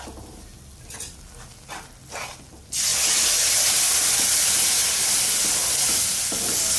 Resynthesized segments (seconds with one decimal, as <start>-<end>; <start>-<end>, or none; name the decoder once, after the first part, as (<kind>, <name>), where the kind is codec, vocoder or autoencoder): none